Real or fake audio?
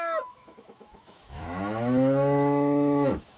fake